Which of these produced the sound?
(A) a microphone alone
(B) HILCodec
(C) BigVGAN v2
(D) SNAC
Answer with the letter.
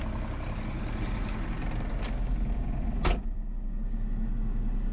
A